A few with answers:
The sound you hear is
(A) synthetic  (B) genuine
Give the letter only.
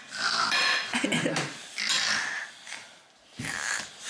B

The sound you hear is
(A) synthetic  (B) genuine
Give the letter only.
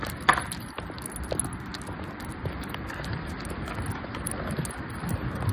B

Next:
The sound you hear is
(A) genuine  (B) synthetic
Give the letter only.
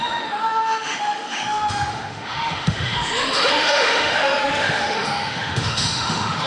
B